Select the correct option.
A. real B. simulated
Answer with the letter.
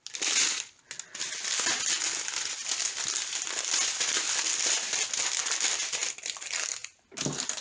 A